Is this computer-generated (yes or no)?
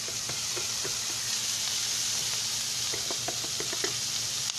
no